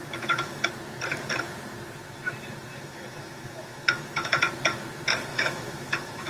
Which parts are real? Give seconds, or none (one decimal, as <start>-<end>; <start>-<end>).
0.7-2.7; 4.5-5.3